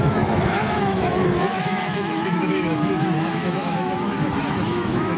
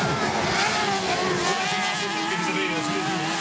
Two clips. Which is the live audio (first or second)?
second